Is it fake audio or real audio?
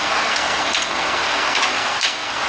fake